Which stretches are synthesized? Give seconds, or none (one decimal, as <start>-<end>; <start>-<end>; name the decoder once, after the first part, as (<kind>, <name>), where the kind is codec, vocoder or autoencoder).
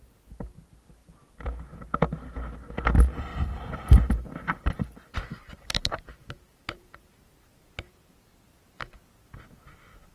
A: 3.3-7.2 (vocoder, BigVGAN v2)